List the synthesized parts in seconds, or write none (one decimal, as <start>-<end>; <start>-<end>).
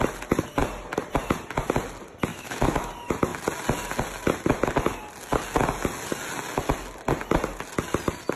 2.3-2.9